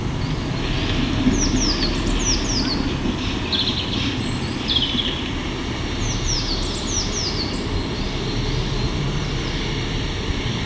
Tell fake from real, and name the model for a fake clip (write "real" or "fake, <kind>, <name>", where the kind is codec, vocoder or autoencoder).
real